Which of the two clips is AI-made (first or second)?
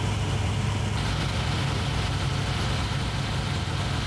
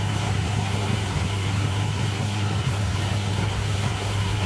second